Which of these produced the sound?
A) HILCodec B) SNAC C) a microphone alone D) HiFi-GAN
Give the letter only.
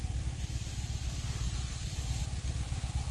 C